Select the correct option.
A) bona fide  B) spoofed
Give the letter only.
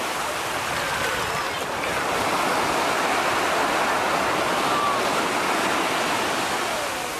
A